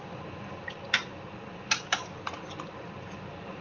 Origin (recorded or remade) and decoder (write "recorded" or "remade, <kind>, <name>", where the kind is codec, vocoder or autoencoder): recorded